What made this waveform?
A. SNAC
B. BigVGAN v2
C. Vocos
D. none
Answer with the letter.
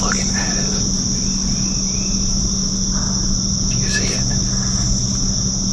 D